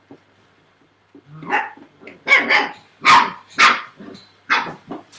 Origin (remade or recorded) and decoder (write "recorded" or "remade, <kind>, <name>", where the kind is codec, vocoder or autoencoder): recorded